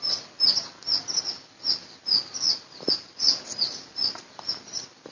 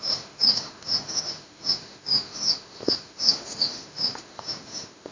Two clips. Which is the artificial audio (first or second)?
second